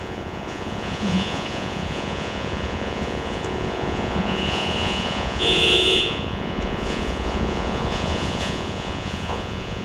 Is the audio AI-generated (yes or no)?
yes